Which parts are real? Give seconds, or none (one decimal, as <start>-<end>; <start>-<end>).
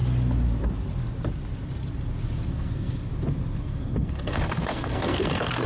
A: 0.0-2.5; 3.1-3.6